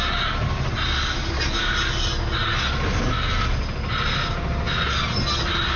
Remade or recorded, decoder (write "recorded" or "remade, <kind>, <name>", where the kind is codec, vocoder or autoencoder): recorded